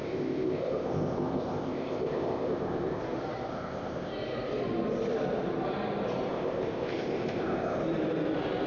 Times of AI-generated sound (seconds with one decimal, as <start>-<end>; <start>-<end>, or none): 0.0-3.0; 3.5-4.1; 6.3-7.8